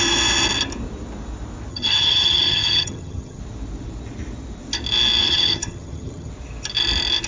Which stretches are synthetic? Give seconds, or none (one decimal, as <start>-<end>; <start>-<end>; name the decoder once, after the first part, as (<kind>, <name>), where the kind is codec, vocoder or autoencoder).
1.7-3.4 (vocoder, HiFi-GAN); 5.2-6.3